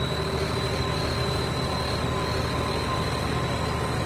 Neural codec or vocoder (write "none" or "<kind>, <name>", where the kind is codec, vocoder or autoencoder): none